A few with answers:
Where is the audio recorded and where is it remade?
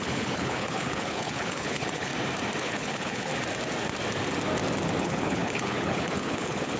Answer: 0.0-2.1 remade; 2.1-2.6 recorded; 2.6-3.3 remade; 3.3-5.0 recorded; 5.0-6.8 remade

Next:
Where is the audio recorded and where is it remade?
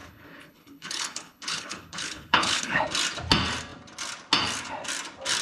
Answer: 0.0-2.8 remade; 2.8-5.4 recorded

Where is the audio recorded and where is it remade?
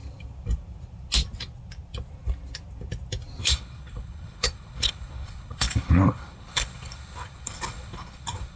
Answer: 0.0-3.4 recorded; 3.4-8.6 remade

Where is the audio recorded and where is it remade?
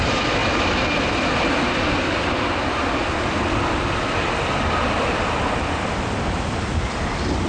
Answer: 0.0-7.5 recorded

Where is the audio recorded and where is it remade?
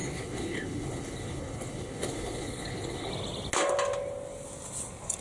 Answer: 0.0-3.1 remade; 3.1-5.2 recorded